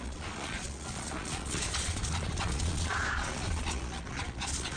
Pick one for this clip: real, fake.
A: fake